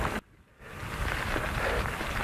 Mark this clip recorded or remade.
recorded